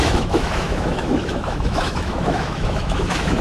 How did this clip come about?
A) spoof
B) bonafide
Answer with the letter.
A